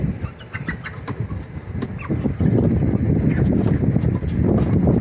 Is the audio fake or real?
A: real